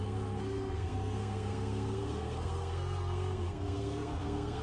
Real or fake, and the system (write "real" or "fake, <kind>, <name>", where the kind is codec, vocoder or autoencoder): fake, codec, SNAC